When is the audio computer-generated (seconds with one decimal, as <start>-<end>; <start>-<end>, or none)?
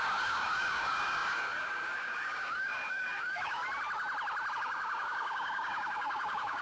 0.0-3.6; 4.5-6.6